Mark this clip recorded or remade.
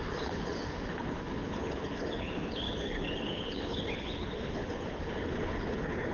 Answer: remade